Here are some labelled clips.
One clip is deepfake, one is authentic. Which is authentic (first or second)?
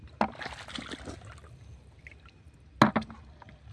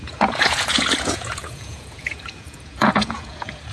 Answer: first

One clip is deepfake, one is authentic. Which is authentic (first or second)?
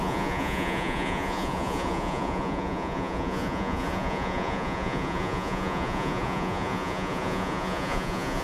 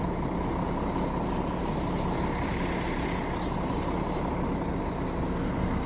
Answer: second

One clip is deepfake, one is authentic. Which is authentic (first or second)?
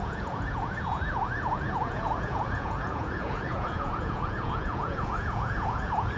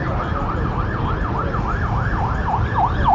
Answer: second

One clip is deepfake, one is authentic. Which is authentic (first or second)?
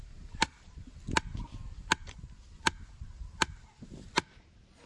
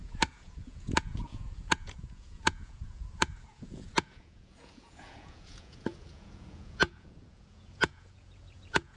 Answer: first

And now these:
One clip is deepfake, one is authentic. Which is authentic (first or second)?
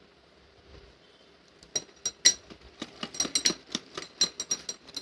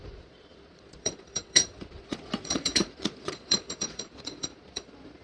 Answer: first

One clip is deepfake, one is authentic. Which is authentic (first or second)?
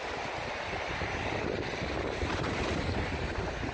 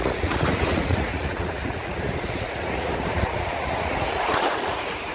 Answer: first